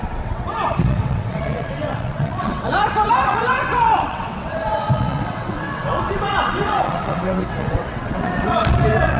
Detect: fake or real fake